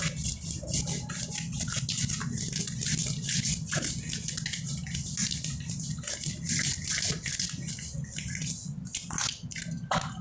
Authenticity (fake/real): real